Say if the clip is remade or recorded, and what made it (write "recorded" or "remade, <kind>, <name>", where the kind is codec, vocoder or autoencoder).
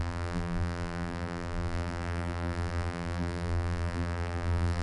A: remade, vocoder, BigVGAN v2